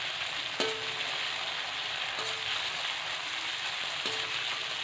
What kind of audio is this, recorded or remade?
recorded